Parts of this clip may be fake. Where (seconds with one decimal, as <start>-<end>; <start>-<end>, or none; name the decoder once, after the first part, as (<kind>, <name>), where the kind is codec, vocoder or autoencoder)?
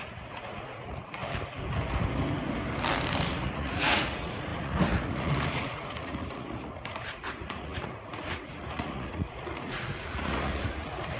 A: 0.0-1.2 (vocoder, Vocos); 3.3-11.2